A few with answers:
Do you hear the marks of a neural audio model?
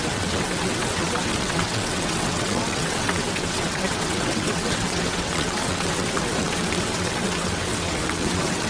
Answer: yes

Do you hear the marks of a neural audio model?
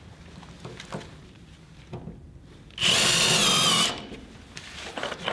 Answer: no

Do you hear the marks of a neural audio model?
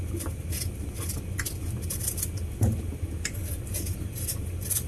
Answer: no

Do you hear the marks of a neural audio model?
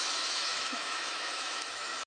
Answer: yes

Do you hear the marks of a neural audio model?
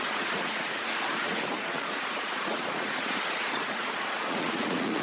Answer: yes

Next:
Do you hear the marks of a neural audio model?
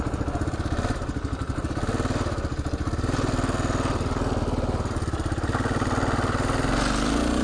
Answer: no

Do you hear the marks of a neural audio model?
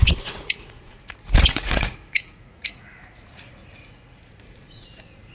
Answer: yes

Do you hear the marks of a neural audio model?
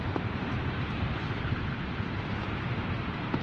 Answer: yes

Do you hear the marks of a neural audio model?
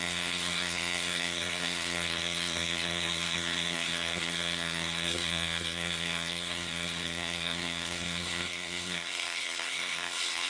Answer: yes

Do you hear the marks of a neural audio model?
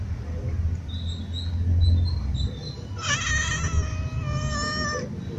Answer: no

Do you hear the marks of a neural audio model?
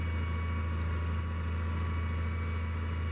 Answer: no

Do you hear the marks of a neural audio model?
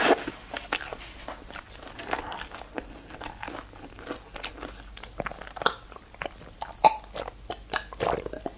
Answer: no